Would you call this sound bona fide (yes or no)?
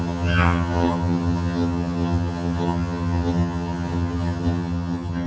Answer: no